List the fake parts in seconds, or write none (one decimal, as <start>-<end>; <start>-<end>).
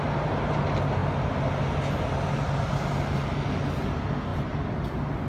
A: none